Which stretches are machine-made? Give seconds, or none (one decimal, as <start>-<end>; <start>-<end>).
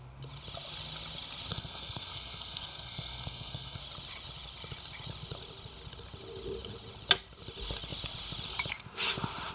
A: 1.5-3.8